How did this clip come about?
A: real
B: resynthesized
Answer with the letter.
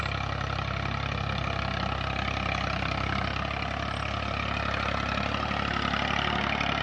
A